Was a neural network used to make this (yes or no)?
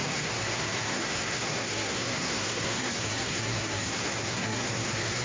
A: yes